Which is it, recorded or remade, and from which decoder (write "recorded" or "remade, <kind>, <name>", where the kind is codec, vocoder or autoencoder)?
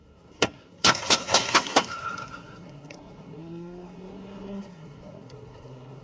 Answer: remade, codec, SNAC